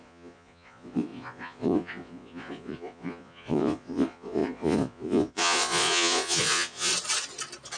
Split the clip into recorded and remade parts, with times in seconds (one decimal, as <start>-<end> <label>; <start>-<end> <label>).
0.0-6.9 remade; 6.9-7.8 recorded

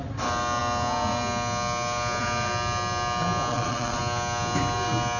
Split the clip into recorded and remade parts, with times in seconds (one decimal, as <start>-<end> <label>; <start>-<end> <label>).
0.0-3.5 recorded; 3.5-4.0 remade; 4.0-5.2 recorded

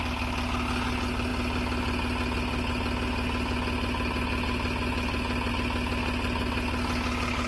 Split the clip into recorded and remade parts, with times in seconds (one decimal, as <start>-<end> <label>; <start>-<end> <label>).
0.0-7.5 recorded

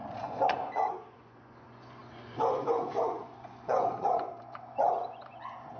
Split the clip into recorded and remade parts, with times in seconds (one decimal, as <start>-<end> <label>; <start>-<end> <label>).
0.0-5.8 remade

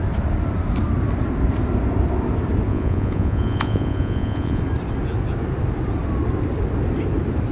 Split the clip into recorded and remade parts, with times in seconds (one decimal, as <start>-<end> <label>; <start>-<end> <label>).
0.0-2.7 recorded; 2.7-4.6 remade; 4.6-7.5 recorded

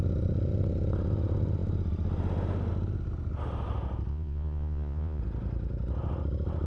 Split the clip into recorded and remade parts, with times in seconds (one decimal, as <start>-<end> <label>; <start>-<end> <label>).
0.0-4.1 recorded; 4.1-5.2 remade; 5.2-6.7 recorded

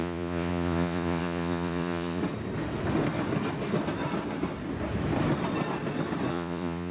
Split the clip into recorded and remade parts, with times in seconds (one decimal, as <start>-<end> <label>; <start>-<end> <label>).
0.0-2.2 remade; 2.2-6.3 recorded; 6.3-6.9 remade